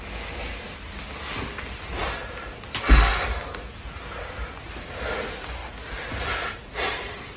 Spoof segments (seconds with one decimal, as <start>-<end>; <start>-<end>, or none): none